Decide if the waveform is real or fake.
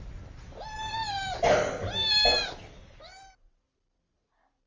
real